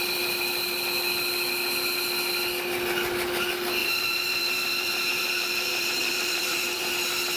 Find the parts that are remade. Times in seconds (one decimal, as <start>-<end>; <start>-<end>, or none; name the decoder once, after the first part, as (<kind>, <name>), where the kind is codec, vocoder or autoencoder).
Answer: 3.8-6.9 (vocoder, BigVGAN v2)